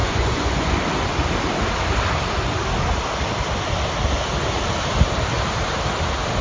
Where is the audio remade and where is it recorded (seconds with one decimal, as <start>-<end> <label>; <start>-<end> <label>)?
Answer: 0.0-0.7 remade; 0.7-6.4 recorded